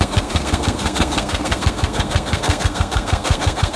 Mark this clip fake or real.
fake